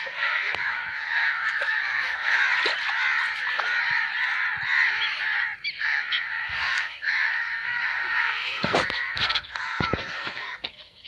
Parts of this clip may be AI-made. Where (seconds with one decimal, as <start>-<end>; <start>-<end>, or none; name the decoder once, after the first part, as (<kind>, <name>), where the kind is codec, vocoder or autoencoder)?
0.0-2.4 (codec, SNAC); 5.8-11.1